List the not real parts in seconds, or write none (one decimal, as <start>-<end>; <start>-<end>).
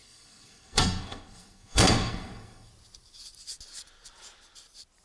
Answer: 0.0-2.7